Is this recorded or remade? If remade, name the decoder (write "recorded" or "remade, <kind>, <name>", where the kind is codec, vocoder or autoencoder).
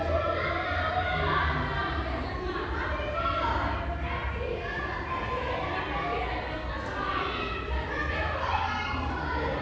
recorded